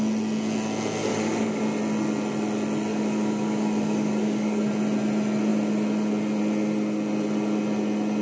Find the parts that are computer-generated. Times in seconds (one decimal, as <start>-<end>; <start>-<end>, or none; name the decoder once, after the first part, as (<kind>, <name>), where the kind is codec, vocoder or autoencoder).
1.1-1.6 (codec, DAC); 2.9-4.7